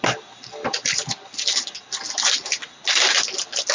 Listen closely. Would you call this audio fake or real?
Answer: real